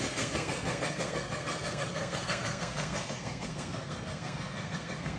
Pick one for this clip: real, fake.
fake